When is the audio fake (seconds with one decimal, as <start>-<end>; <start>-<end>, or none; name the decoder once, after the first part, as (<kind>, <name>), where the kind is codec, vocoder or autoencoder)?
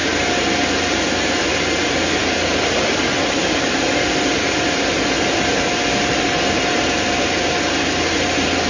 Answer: none